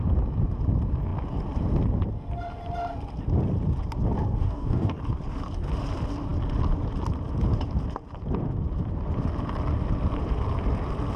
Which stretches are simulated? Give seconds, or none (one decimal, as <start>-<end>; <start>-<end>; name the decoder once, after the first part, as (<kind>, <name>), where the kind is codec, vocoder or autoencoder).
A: 4.4-5.0 (codec, DAC)